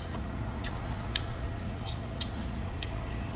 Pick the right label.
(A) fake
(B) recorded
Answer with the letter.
A